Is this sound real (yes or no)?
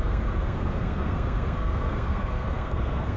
no